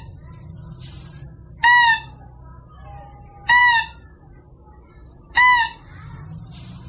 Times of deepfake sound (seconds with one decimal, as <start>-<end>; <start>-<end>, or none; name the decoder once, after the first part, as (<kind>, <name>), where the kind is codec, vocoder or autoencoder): none